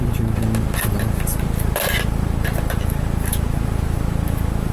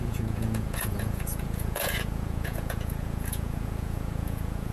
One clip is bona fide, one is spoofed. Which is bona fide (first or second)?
first